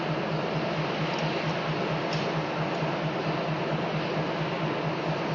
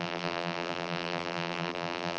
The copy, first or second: second